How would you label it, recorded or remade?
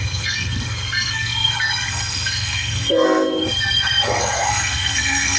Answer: remade